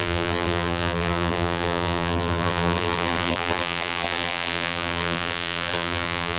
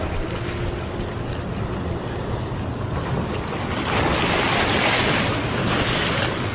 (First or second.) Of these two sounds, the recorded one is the second